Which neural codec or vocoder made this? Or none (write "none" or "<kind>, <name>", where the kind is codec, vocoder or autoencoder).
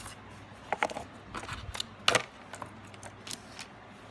none